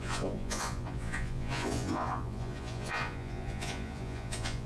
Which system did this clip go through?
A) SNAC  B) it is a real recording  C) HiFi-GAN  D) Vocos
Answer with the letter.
D